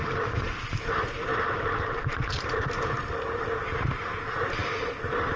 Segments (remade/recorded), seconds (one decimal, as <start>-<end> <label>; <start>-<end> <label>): 0.0-5.4 recorded